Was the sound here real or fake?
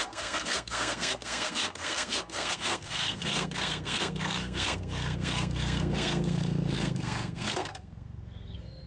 fake